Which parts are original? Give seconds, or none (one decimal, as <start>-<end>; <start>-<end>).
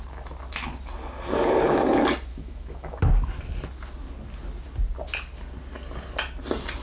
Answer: 0.0-2.3; 3.0-6.8